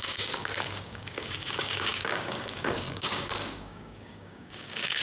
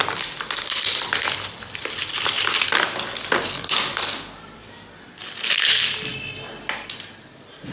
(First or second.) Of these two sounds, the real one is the second